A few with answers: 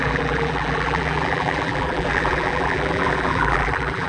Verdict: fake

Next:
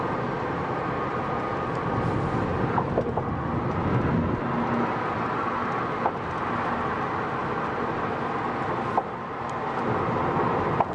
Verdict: real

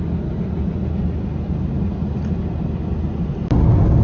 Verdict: real